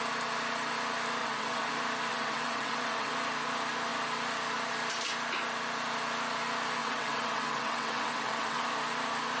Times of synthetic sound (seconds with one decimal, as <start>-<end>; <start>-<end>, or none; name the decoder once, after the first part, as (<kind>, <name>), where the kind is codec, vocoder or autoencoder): 1.2-1.7 (vocoder, WaveNeXt); 2.1-3.1; 6.8-8.6